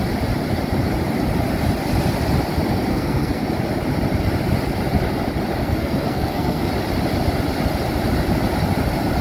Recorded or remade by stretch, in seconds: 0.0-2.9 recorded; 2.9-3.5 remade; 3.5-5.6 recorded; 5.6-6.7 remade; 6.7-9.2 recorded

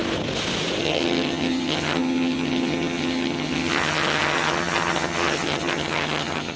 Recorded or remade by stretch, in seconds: 0.0-0.8 recorded; 0.8-6.6 remade

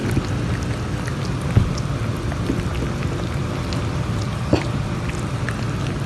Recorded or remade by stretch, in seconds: 0.0-6.1 recorded

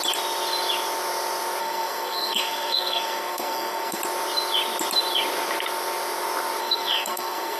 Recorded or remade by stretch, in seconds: 0.0-1.6 recorded; 1.6-4.0 remade; 4.0-6.6 recorded; 6.6-7.6 remade